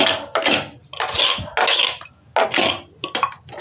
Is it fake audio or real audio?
real